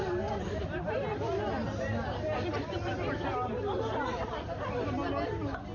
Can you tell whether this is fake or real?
real